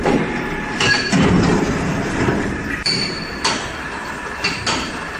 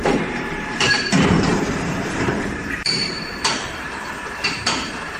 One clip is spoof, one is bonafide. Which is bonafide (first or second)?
first